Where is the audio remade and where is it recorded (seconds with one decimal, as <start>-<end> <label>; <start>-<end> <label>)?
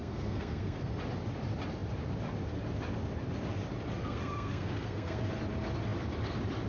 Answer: 0.0-0.9 remade; 0.9-4.0 recorded; 4.0-5.2 remade; 5.2-6.7 recorded